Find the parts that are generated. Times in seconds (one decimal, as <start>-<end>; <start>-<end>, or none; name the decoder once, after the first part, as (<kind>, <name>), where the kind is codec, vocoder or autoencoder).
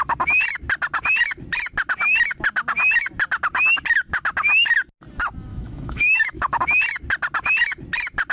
5.5-6.6 (autoencoder, DAC-VAE)